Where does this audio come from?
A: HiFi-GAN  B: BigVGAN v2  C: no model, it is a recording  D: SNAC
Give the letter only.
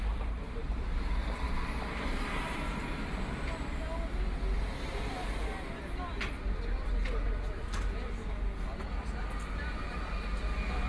C